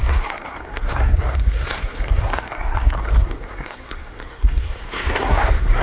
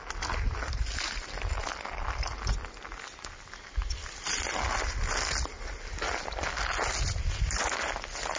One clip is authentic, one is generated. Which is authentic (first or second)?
second